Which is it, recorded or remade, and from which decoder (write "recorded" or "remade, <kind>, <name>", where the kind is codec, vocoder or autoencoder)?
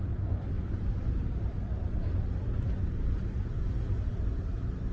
recorded